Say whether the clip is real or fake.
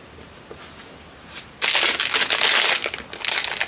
real